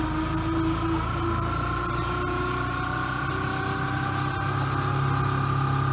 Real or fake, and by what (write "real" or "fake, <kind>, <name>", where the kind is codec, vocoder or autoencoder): real